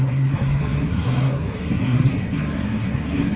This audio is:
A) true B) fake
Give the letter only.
B